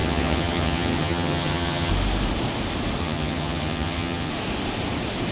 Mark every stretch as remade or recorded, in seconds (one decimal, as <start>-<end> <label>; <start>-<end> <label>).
0.0-1.9 remade; 1.9-3.0 recorded; 3.0-4.3 remade; 4.3-5.3 recorded